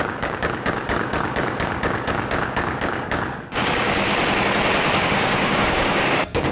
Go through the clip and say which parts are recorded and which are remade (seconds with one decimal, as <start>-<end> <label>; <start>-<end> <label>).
0.0-4.1 remade; 4.1-5.0 recorded; 5.0-6.5 remade